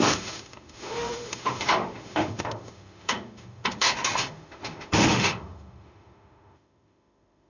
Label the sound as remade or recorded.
remade